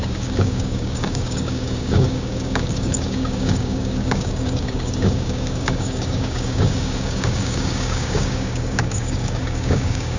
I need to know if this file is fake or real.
fake